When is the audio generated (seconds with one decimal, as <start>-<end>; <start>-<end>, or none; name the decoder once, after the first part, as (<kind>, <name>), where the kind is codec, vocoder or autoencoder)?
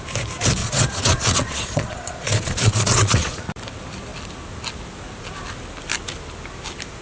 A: 0.6-3.5 (vocoder, Vocos)